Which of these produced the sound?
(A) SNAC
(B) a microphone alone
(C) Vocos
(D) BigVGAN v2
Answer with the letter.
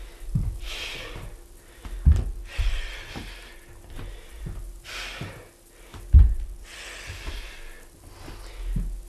B